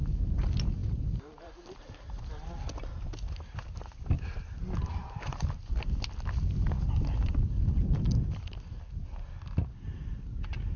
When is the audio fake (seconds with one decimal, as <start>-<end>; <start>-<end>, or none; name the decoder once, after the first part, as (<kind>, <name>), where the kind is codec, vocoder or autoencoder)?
0.8-2.3 (vocoder, BigVGAN v2); 4.9-5.7